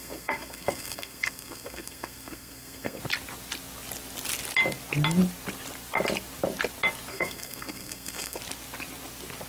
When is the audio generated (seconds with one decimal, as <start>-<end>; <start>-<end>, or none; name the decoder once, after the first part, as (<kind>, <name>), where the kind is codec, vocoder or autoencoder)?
0.0-3.0 (codec, SNAC); 7.1-8.4